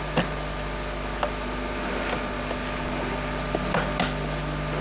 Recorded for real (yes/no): yes